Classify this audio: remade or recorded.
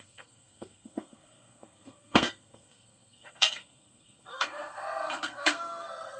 remade